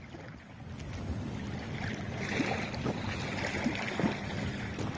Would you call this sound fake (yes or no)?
no